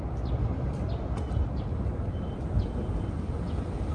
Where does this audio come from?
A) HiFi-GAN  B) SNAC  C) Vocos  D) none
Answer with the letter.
D